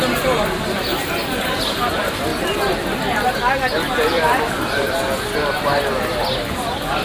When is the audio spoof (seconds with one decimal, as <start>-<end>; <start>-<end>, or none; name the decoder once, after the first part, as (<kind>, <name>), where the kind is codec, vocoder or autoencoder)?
none